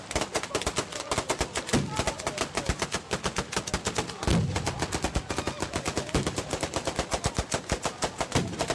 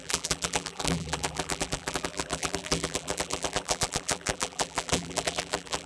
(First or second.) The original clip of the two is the first